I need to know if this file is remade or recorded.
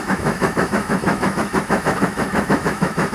remade